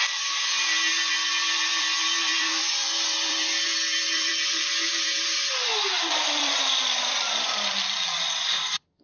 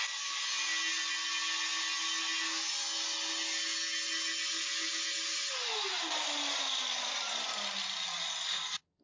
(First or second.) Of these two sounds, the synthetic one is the first